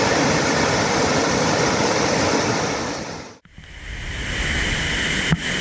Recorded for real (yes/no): yes